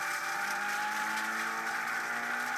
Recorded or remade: recorded